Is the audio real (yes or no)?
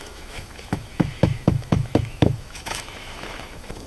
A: no